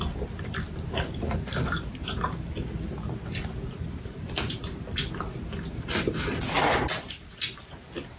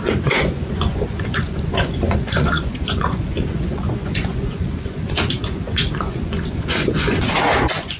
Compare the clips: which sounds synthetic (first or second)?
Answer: second